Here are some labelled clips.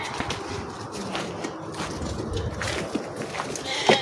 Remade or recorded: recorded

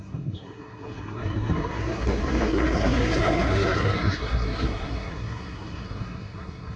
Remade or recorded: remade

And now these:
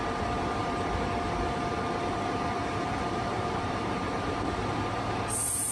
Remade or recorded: remade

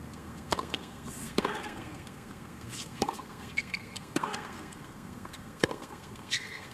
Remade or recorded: remade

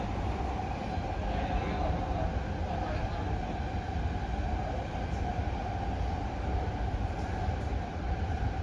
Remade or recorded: recorded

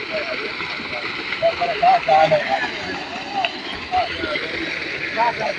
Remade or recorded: recorded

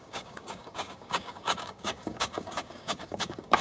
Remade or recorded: remade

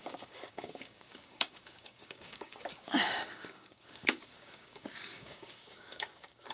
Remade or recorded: remade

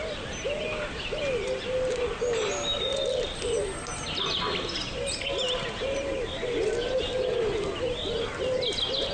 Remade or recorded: recorded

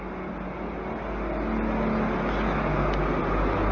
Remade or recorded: recorded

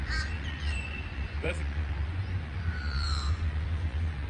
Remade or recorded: remade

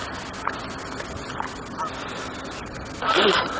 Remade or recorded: recorded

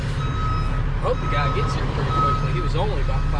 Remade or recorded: recorded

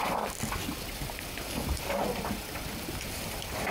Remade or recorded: recorded